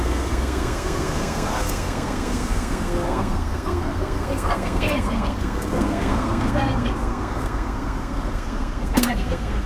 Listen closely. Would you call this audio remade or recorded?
remade